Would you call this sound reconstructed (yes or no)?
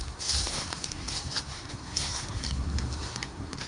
yes